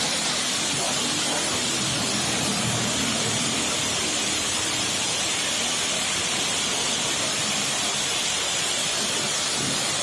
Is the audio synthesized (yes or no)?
yes